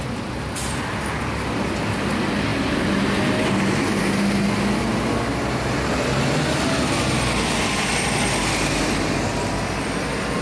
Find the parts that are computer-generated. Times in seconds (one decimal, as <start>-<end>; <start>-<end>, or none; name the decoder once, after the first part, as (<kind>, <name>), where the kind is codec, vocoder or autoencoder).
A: none